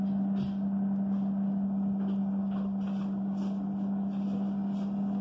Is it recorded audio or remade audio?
recorded